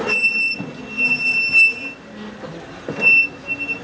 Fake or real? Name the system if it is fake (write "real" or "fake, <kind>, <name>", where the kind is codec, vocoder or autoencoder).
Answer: real